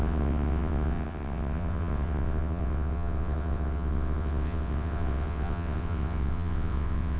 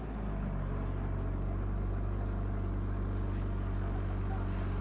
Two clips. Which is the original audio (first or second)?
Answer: second